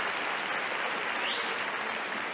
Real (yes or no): yes